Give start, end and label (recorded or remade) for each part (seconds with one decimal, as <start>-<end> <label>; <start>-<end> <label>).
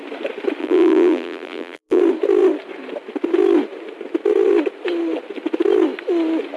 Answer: 0.0-0.6 recorded; 0.6-2.0 remade; 2.0-6.6 recorded